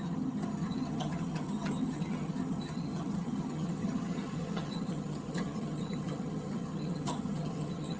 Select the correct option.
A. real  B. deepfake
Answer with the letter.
B